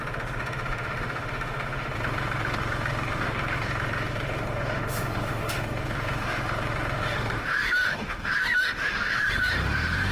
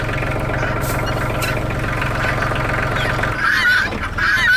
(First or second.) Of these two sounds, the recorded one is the second